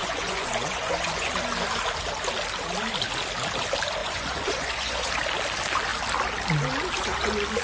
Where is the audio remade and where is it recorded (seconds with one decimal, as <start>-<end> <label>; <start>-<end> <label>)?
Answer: 0.0-1.3 remade; 1.3-4.0 recorded; 4.0-5.1 remade; 5.1-7.6 recorded